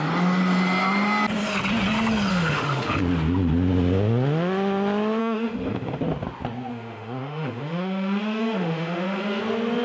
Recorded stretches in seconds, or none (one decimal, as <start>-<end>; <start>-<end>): 0.0-2.3; 3.0-5.2; 6.0-6.7; 9.4-9.8